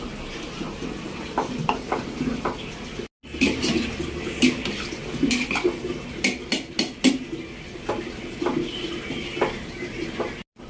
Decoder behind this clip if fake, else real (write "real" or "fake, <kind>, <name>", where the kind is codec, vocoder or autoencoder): real